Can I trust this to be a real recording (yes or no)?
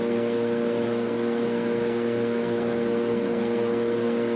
no